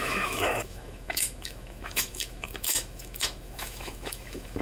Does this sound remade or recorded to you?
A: remade